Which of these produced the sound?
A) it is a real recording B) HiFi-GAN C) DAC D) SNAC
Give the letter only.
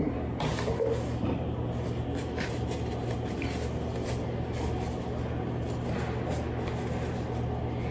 A